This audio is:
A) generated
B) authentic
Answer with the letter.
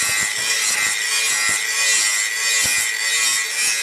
B